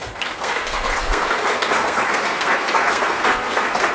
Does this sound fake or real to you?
fake